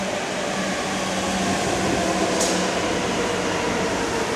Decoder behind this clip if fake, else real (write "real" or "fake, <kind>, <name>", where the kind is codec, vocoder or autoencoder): real